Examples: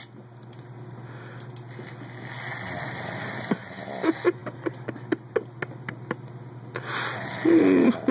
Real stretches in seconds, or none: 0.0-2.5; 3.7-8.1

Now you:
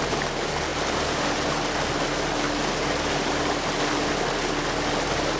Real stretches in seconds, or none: 0.0-5.4

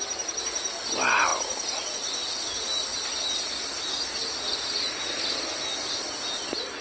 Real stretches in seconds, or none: 0.0-6.8

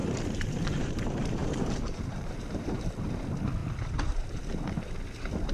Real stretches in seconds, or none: 1.0-1.4; 3.2-3.6; 4.4-5.5

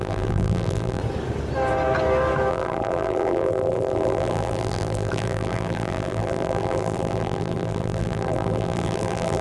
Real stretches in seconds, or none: 1.0-2.5

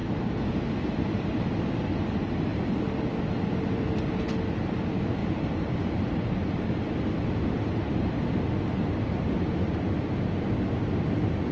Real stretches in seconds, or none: 1.6-2.5; 4.1-11.5